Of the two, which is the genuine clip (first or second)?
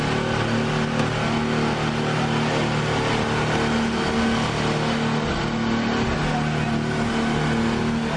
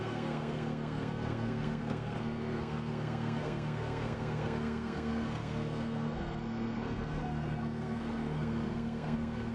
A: first